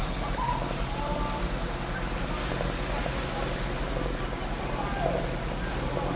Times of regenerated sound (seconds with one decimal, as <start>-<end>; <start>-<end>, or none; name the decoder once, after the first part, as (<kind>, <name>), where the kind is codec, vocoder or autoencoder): none

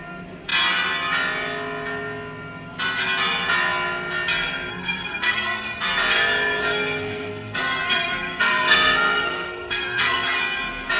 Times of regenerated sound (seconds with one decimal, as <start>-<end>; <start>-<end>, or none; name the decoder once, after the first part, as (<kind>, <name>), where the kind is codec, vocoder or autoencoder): 4.7-5.8 (codec, SNAC); 6.6-10.4

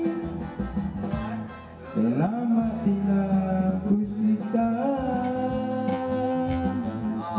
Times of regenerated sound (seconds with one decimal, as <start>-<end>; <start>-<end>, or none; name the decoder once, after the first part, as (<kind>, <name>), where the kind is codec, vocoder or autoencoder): 5.9-7.4 (vocoder, BigVGAN v2)